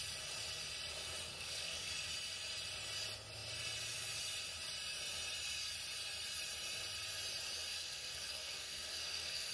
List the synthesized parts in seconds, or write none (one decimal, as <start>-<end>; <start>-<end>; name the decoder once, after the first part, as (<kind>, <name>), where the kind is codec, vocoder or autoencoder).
1.3-1.9 (codec, SNAC); 7.7-9.5